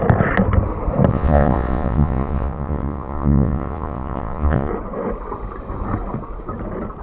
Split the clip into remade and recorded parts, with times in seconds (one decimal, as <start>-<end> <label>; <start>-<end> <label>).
0.0-1.1 recorded; 1.1-4.7 remade; 4.7-7.0 recorded